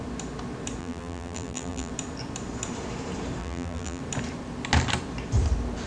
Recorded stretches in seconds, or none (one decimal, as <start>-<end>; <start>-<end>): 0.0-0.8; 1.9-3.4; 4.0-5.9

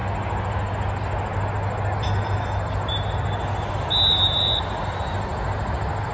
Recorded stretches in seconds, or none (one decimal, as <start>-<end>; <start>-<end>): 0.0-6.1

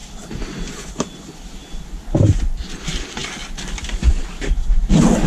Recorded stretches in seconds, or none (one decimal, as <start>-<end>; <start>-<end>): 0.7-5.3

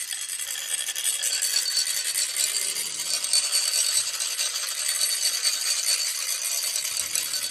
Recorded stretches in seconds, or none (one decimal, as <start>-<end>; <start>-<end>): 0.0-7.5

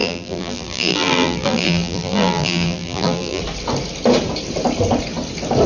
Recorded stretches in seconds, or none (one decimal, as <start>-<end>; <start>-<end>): 3.4-5.7

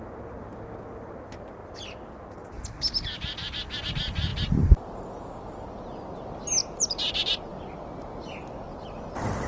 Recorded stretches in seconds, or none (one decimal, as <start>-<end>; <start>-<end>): 0.0-6.6; 7.1-9.5

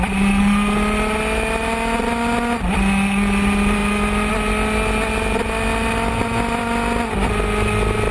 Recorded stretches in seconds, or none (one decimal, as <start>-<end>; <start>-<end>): 0.0-8.1

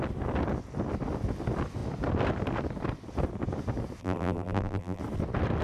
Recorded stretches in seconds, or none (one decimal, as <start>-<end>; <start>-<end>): 0.0-4.0; 5.0-5.6